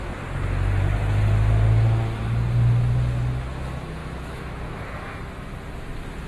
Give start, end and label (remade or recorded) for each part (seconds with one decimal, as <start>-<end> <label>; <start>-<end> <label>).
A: 0.0-4.0 recorded; 4.0-5.2 remade; 5.2-6.3 recorded